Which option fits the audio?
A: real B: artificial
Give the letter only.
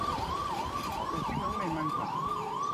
B